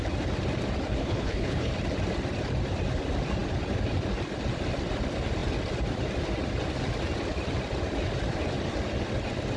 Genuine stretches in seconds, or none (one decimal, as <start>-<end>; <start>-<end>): 0.0-1.0; 1.7-9.6